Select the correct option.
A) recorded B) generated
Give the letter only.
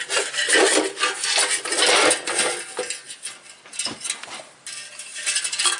A